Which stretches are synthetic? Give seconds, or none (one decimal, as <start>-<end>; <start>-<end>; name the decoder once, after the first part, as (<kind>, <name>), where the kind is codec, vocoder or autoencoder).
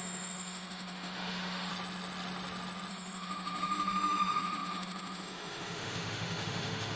0.0-1.7 (autoencoder, DAC-VAE); 2.9-7.0